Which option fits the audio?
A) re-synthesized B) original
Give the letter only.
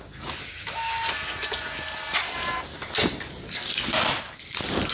B